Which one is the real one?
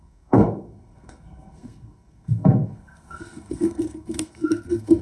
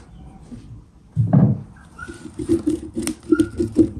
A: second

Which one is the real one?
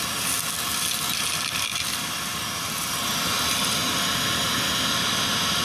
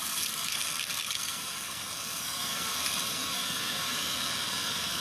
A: first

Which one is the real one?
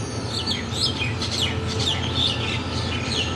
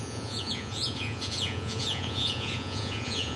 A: first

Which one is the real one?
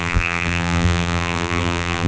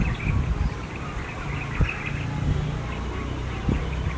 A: second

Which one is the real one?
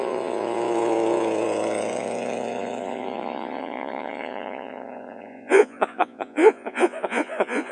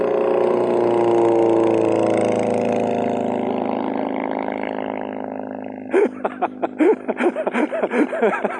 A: second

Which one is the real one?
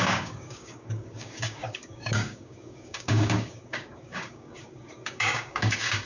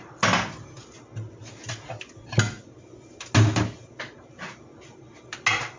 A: second